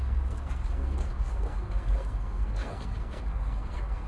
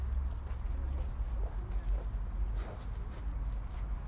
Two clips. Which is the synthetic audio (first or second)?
first